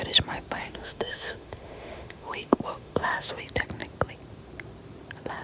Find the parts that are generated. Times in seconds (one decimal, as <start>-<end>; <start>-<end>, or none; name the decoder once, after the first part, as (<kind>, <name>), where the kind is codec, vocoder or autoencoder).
0.6-3.3 (autoencoder, DAC-VAE)